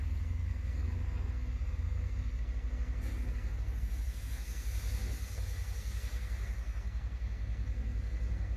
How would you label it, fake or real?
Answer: fake